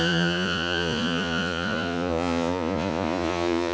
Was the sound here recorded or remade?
remade